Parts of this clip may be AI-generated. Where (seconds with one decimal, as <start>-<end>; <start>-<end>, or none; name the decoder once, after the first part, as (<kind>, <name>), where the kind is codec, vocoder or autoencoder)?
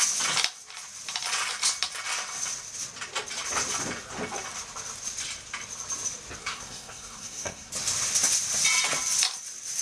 6.4-7.7 (codec, SNAC)